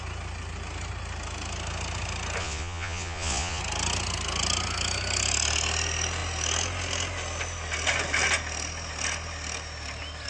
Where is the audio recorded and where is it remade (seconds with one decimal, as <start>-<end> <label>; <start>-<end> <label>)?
0.0-2.4 recorded; 2.4-3.6 remade; 3.6-10.3 recorded